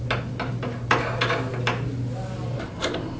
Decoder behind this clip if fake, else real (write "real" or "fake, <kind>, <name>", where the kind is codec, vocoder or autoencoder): real